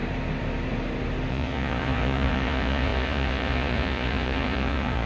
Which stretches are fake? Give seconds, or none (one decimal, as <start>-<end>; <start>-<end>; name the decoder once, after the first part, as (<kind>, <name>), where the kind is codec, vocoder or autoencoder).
1.3-5.1 (vocoder, Vocos)